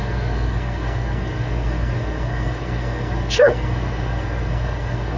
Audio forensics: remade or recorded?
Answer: remade